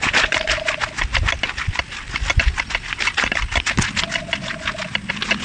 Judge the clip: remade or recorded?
recorded